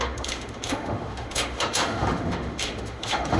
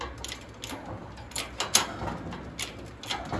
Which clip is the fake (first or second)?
first